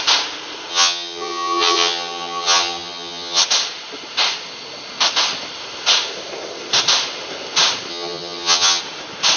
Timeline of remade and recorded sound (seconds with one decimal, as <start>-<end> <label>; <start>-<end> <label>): 0.0-0.7 recorded; 0.7-3.4 remade; 3.4-7.9 recorded; 7.9-8.8 remade; 8.8-9.4 recorded